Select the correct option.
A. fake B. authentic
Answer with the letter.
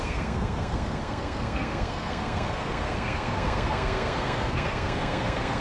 A